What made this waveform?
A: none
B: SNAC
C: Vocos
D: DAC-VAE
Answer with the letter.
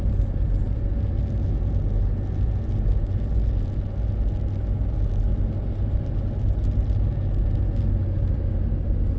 A